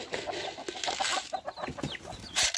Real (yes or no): yes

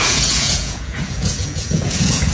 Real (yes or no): no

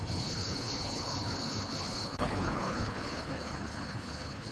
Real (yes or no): no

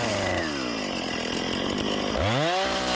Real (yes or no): yes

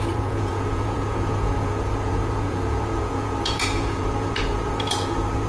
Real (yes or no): no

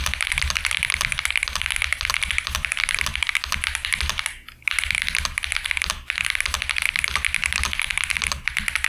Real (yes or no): yes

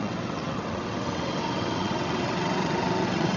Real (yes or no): no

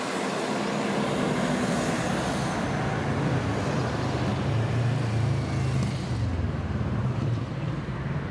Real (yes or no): yes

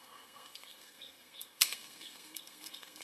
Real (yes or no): no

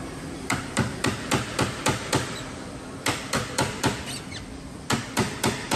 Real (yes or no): no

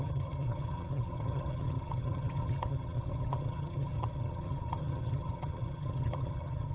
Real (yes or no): no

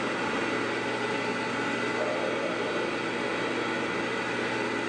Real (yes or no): yes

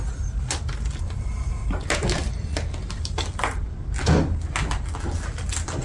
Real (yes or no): yes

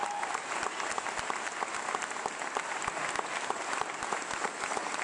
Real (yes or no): yes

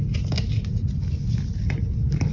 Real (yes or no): yes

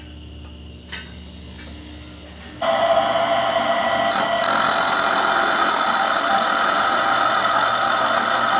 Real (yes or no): yes